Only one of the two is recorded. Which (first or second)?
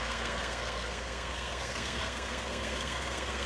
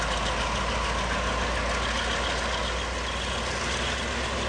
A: second